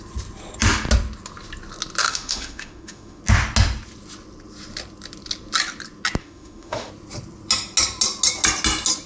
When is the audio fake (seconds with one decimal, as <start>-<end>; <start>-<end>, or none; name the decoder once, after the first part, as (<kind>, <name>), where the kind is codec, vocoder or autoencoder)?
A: 2.0-3.2 (autoencoder, DAC-VAE); 6.2-6.9